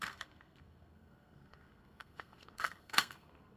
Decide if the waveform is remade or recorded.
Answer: remade